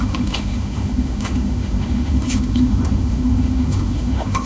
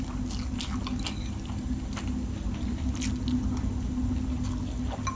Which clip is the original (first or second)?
second